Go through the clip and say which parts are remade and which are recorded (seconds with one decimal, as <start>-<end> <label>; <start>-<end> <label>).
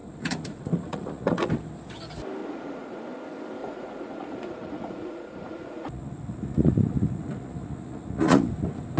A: 0.0-1.5 remade; 1.5-2.4 recorded; 2.4-3.0 remade; 3.0-3.6 recorded; 3.6-8.5 remade; 8.5-9.0 recorded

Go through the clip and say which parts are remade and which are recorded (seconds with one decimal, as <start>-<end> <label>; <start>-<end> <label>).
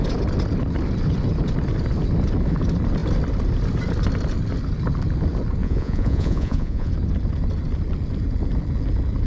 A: 0.0-5.6 recorded; 5.6-6.9 remade; 6.9-9.3 recorded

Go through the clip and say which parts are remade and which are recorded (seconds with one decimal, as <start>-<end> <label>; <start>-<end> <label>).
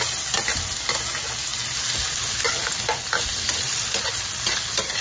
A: 0.0-5.0 recorded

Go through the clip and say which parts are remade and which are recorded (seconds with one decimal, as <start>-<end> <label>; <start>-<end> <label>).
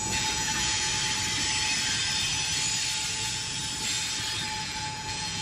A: 0.0-0.9 remade; 0.9-3.1 recorded; 3.1-3.6 remade; 3.6-4.6 recorded; 4.6-5.4 remade